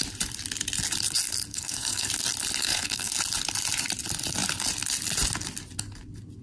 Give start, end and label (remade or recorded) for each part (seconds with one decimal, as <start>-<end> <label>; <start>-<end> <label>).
0.0-1.5 recorded; 1.5-2.1 remade; 2.1-2.6 recorded; 2.6-3.1 remade; 3.1-6.4 recorded